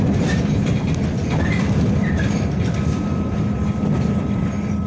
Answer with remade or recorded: recorded